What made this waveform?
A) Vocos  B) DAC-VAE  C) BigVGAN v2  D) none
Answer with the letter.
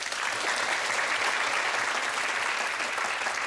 D